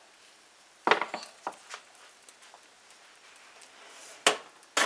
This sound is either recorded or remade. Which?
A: recorded